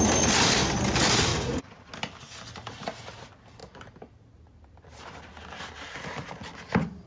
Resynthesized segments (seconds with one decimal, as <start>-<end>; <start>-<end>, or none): 1.3-1.9